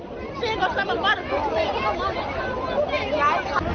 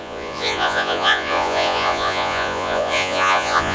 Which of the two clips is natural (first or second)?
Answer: first